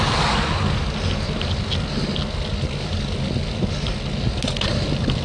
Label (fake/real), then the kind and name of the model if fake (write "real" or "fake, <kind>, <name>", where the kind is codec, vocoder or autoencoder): real